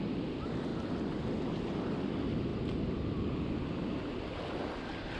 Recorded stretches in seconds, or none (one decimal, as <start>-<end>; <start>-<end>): 0.0-5.2